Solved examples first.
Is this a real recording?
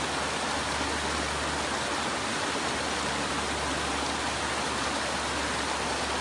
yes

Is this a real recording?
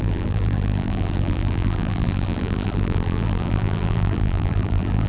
no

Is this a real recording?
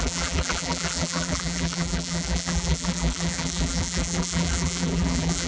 no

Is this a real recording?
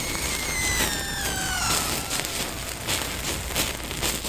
yes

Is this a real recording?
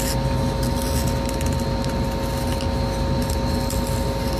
yes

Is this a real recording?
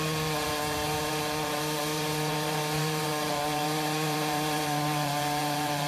no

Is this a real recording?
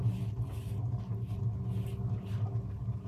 yes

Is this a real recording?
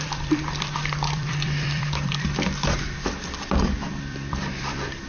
no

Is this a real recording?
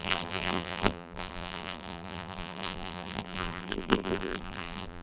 no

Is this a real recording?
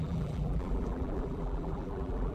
no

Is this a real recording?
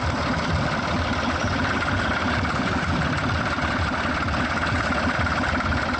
no